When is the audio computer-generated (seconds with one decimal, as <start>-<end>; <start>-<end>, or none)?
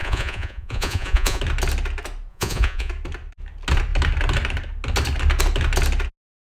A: 0.0-1.4; 2.3-2.9